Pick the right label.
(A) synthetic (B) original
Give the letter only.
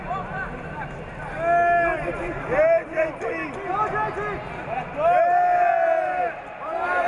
B